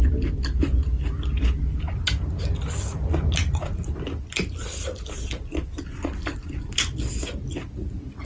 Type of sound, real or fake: real